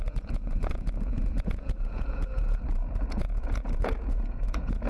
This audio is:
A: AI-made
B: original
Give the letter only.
A